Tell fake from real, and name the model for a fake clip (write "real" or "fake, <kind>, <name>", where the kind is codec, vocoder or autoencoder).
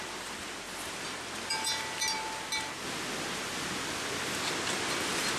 real